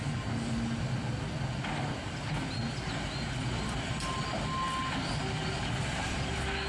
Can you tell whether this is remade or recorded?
recorded